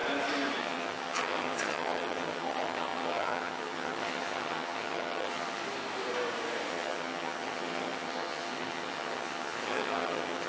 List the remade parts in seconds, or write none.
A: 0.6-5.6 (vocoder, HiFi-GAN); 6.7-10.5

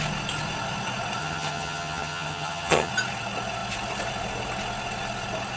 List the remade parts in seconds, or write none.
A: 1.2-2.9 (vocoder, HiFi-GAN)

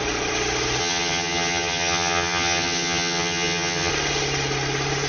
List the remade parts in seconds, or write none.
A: 0.8-3.9 (vocoder, HiFi-GAN)